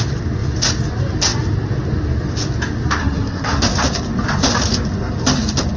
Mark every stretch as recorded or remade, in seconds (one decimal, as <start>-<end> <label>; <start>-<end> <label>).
0.0-3.0 recorded; 3.0-3.6 remade; 3.6-5.8 recorded

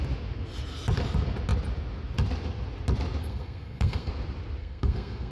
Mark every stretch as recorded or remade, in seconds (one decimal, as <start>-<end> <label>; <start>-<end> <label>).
0.0-3.2 recorded; 3.2-4.1 remade; 4.1-4.6 recorded; 4.6-5.3 remade